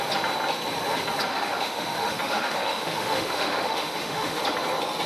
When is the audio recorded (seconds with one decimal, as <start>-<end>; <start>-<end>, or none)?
0.0-1.3; 4.4-5.1